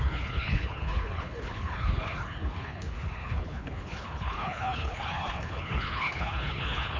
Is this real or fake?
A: fake